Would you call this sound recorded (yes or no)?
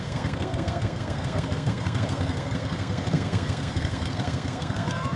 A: no